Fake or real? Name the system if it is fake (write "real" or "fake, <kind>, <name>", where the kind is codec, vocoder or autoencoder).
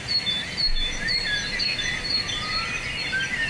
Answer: real